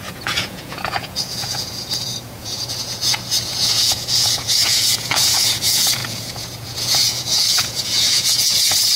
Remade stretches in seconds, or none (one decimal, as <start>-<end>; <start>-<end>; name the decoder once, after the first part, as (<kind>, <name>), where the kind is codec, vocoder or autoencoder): 0.0-9.0 (vocoder, Vocos)